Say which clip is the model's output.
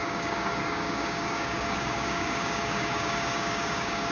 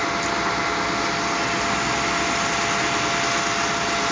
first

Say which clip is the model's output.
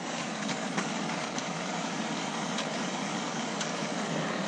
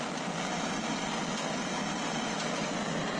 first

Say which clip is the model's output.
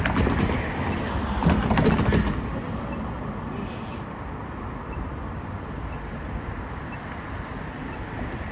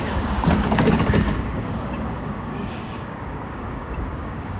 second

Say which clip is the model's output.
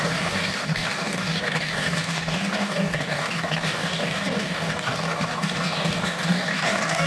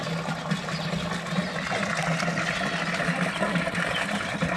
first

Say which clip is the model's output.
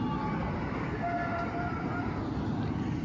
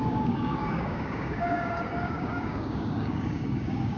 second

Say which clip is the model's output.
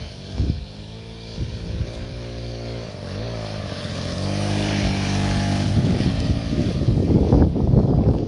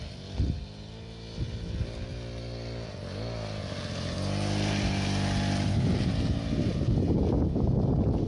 first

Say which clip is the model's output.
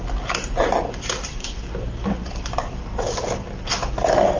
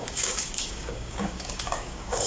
second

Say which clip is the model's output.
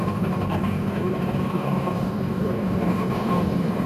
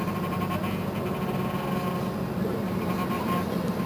first